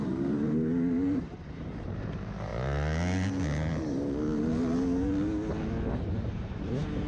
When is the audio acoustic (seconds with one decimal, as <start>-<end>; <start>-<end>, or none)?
2.5-5.9